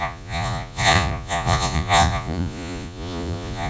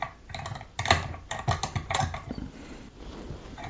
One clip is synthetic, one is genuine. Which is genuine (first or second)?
second